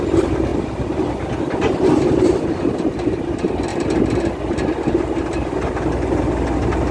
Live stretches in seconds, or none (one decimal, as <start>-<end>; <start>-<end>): 0.0-6.9